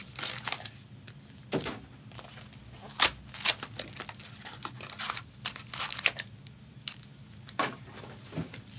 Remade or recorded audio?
recorded